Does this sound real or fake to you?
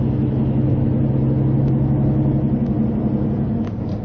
real